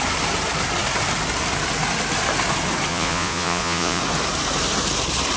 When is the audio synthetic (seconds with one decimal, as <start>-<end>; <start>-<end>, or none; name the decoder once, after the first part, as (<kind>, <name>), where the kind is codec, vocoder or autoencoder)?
2.9-4.0 (vocoder, Vocos)